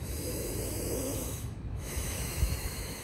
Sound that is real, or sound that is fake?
fake